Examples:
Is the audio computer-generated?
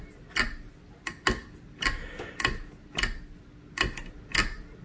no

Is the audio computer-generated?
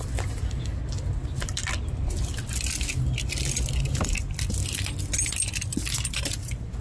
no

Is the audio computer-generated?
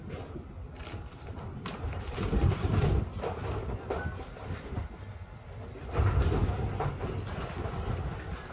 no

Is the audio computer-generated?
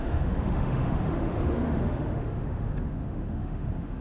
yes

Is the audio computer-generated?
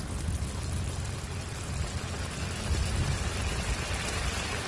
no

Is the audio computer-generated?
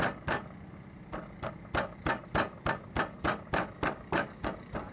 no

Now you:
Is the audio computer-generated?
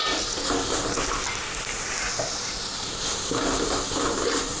no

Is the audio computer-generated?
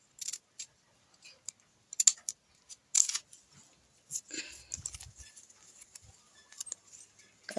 no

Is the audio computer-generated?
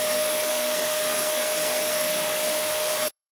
yes